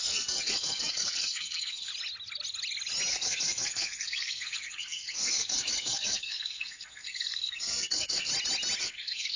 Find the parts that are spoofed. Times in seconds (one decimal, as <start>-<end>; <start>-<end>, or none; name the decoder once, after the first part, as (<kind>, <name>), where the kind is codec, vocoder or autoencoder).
0.0-1.9 (codec, SNAC); 3.1-8.3; 8.8-9.4